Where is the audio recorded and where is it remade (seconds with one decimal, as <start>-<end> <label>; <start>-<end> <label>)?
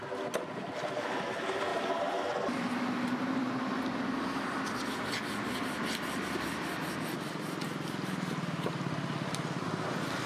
0.0-10.3 recorded